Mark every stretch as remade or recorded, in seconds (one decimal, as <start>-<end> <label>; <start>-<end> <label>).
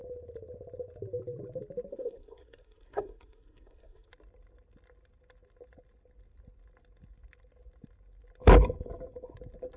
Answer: 0.0-1.9 recorded; 1.9-4.1 remade; 4.1-9.8 recorded